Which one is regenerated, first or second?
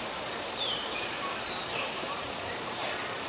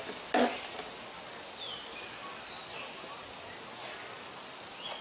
first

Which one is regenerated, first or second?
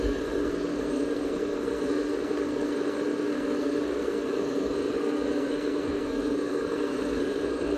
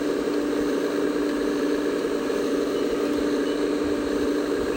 first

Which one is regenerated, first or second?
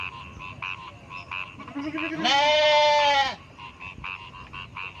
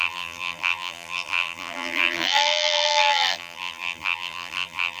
second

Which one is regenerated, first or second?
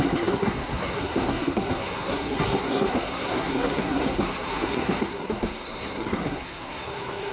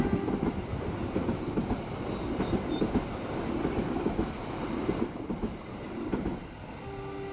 first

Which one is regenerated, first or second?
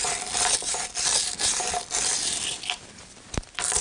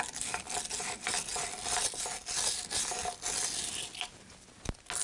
first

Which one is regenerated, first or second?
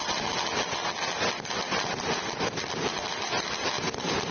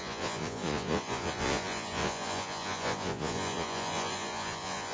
second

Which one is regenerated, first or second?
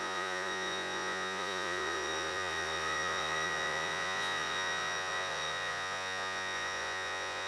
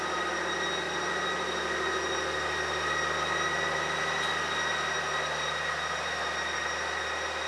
first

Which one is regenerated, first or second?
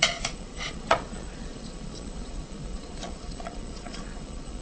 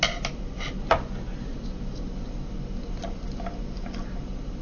first